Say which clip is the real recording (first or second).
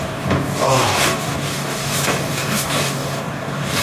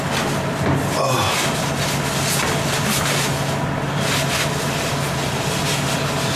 second